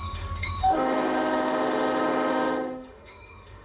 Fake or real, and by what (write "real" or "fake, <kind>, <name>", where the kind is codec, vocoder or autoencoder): fake, autoencoder, DAC-VAE